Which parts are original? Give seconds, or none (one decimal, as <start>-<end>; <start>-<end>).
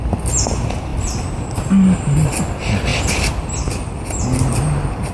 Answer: 2.9-4.0